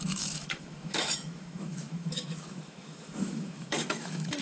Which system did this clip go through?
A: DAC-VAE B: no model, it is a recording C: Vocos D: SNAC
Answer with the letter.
A